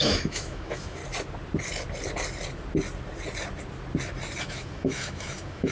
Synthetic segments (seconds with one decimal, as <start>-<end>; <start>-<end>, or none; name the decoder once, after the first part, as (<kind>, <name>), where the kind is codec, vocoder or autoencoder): 0.0-1.0 (autoencoder, DAC-VAE); 4.4-5.7